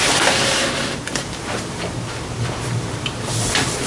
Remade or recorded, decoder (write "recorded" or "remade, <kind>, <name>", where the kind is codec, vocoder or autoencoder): remade, vocoder, BigVGAN v2